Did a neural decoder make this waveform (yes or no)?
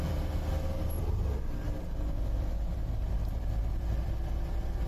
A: yes